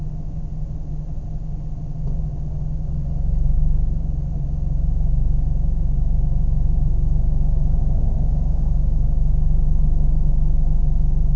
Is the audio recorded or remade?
recorded